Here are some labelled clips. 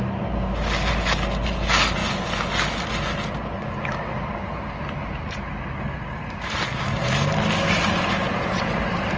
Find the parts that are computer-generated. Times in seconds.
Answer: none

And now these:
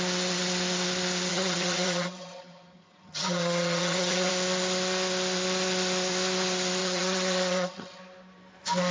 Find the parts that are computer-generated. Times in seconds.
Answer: 1.3-4.3; 6.8-8.0